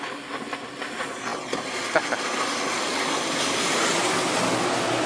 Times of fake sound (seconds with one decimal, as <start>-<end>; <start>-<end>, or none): none